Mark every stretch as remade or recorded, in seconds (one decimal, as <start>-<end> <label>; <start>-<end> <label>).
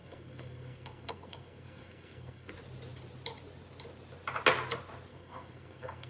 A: 0.0-2.5 remade; 2.5-5.1 recorded; 5.1-6.1 remade